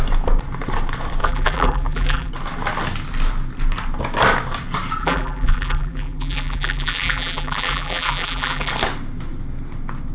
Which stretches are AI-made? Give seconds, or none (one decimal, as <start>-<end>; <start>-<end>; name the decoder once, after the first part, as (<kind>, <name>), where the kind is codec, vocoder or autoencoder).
1.2-2.3 (vocoder, BigVGAN v2); 5.0-8.7